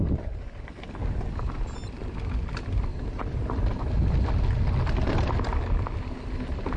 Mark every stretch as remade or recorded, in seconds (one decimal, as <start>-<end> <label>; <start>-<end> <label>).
0.0-2.9 recorded; 2.9-4.3 remade; 4.3-6.8 recorded